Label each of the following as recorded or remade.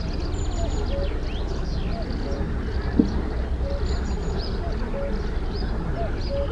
recorded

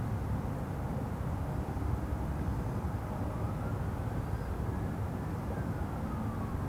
recorded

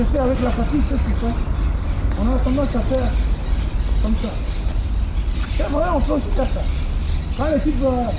recorded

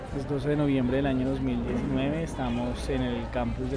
recorded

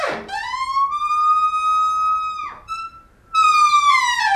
recorded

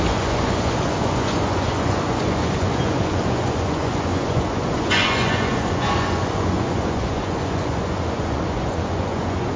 remade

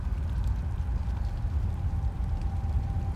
recorded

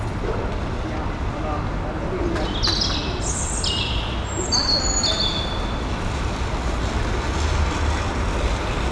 recorded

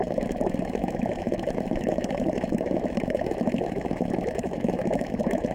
remade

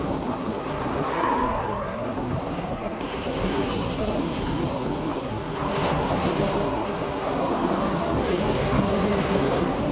remade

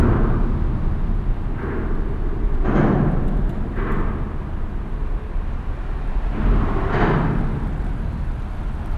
recorded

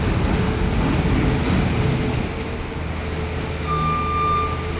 recorded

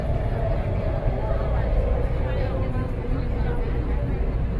recorded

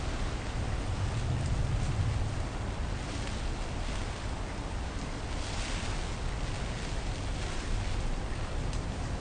recorded